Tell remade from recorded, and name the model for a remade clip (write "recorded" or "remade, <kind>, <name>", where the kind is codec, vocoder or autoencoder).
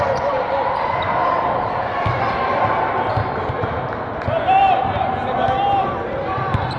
recorded